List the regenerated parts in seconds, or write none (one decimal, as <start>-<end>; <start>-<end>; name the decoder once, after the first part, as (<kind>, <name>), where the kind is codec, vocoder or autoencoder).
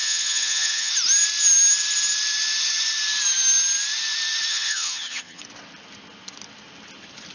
0.0-0.9 (vocoder, HiFi-GAN); 4.5-5.4